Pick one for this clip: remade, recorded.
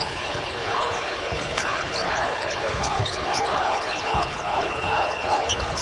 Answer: remade